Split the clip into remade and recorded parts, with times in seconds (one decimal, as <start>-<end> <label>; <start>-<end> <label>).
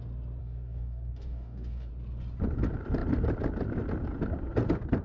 0.0-0.4 recorded; 0.4-1.9 remade; 1.9-5.0 recorded